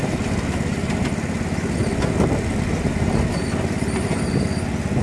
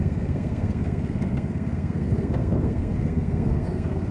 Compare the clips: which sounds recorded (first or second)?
first